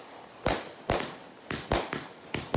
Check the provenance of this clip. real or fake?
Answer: real